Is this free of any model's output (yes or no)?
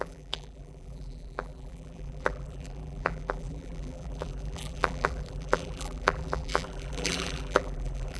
no